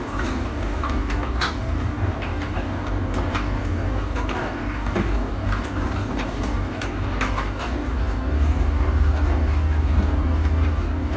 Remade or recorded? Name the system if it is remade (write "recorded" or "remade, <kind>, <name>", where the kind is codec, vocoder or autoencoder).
remade, codec, DAC